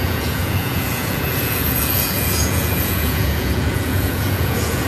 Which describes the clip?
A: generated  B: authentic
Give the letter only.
A